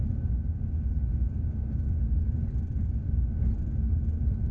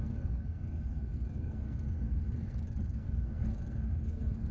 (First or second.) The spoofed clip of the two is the second